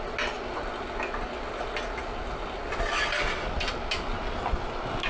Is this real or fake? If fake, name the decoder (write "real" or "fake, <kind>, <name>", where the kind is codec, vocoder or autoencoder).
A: real